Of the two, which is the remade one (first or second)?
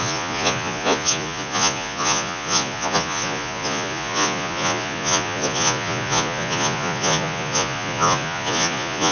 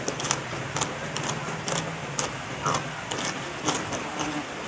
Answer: first